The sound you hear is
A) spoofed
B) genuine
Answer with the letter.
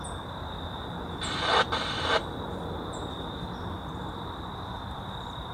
A